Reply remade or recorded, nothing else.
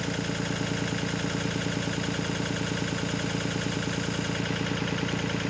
recorded